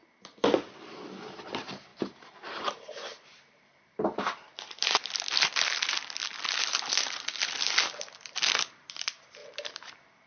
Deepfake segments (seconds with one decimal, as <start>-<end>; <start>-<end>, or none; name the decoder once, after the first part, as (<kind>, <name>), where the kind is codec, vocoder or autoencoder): 1.9-5.1 (vocoder, BigVGAN v2); 9.4-10.3